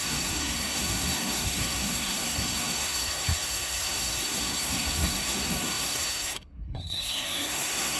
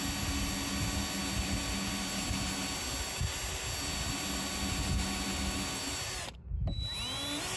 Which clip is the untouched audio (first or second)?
second